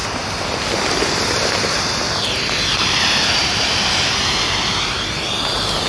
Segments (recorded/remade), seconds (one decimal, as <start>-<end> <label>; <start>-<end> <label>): 0.0-5.9 recorded